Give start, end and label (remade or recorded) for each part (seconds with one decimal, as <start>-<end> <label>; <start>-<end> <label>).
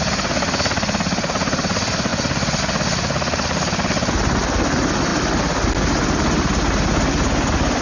0.0-7.8 recorded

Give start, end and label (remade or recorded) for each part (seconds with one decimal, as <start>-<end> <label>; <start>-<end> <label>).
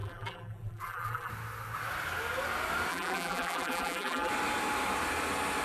0.0-1.3 remade; 1.3-2.9 recorded; 2.9-4.3 remade; 4.3-5.6 recorded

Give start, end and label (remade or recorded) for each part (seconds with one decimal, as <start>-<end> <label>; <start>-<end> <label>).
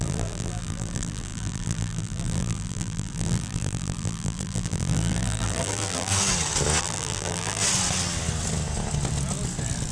0.0-6.1 remade; 6.1-6.8 recorded; 6.8-7.6 remade; 7.6-9.9 recorded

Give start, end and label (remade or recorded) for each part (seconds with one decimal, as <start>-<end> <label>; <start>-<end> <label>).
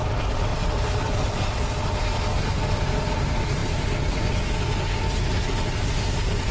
0.0-0.5 recorded; 0.5-1.6 remade; 1.6-6.5 recorded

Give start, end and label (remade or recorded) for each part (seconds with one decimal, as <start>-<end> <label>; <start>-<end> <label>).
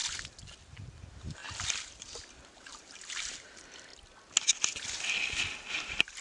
0.0-0.7 recorded; 0.7-1.4 remade; 1.4-2.6 recorded; 2.6-3.9 remade; 3.9-5.8 recorded; 5.8-6.2 remade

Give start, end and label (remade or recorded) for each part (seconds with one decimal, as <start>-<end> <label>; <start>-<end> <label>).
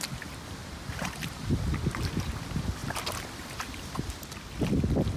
0.0-0.6 recorded; 0.6-1.6 remade; 1.6-5.2 recorded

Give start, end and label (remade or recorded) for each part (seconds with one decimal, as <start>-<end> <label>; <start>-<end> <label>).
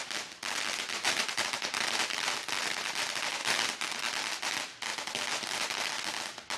0.0-1.0 recorded; 1.0-2.3 remade; 2.3-3.4 recorded; 3.4-4.1 remade; 4.1-6.6 recorded